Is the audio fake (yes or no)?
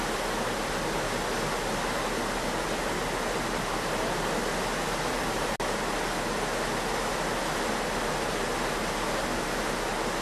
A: no